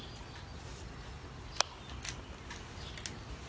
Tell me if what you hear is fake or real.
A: real